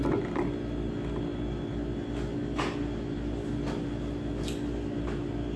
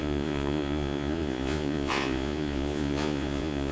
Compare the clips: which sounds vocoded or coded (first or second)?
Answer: second